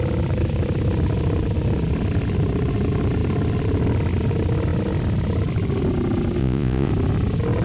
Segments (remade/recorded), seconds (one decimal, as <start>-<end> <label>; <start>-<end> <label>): 0.0-6.4 recorded; 6.4-6.9 remade; 6.9-7.6 recorded